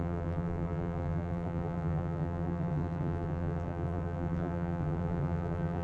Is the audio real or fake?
fake